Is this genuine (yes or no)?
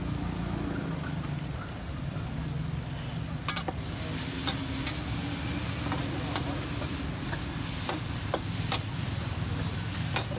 yes